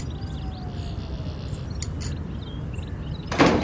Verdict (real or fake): real